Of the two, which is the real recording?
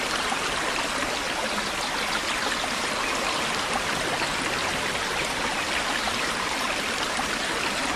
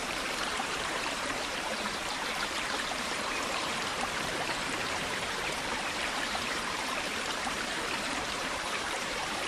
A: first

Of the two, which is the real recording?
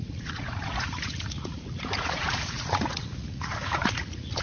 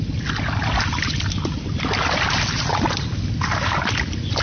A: second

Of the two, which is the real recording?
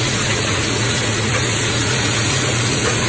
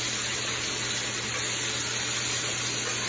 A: second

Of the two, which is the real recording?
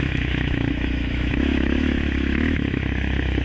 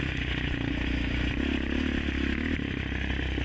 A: second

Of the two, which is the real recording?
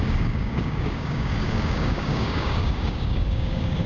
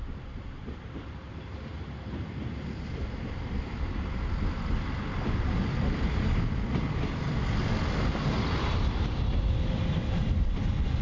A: second